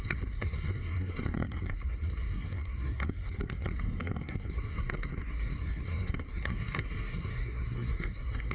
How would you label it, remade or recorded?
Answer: remade